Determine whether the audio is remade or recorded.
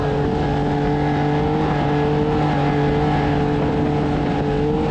recorded